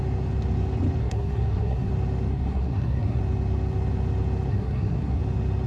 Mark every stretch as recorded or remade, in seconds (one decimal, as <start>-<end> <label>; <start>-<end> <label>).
0.0-1.0 recorded; 1.0-1.9 remade; 1.9-2.3 recorded; 2.3-3.2 remade; 3.2-4.5 recorded; 4.5-5.2 remade; 5.2-5.7 recorded